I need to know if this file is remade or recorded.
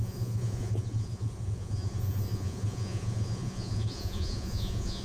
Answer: remade